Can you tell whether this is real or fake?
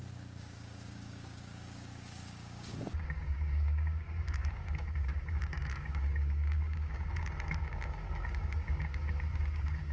fake